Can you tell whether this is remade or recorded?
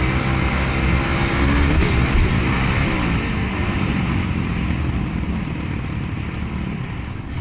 recorded